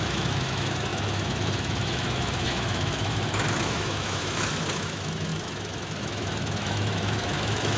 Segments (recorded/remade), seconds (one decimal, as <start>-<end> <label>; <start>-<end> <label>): 0.0-7.8 remade